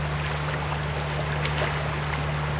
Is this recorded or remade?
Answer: recorded